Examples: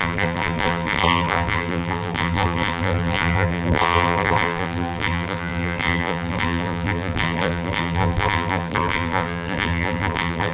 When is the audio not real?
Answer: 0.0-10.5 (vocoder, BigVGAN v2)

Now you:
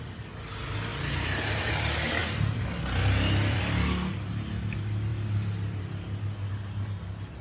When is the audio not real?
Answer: 0.9-1.7 (vocoder, BigVGAN v2); 2.2-3.6